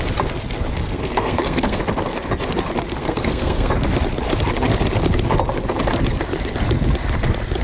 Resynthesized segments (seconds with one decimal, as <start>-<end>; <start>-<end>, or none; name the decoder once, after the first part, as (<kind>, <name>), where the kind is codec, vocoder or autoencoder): 0.8-1.8 (codec, SNAC); 3.0-3.7